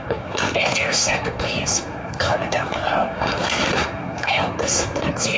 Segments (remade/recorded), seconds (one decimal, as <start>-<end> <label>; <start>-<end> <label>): 0.0-5.4 remade